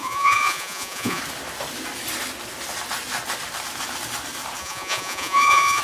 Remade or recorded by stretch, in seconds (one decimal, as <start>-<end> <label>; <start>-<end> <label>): 0.0-1.2 remade; 1.2-4.6 recorded; 4.6-5.8 remade